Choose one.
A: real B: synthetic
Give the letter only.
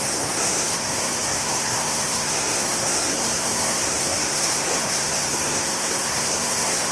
B